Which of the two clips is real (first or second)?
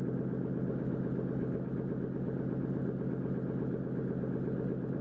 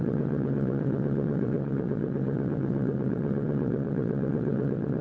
first